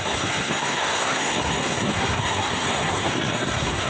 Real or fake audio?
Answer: fake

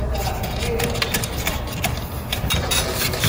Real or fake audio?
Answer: real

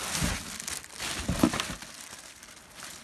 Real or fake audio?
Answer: real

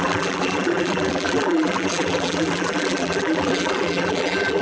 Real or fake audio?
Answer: fake